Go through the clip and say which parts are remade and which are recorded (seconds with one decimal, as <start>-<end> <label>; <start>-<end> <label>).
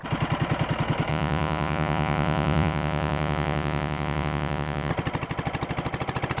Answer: 0.0-1.1 recorded; 1.1-4.9 remade; 4.9-6.4 recorded